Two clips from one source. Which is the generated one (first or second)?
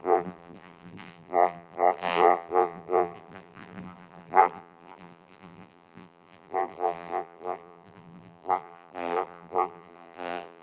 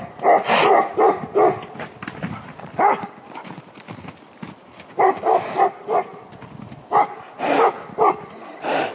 first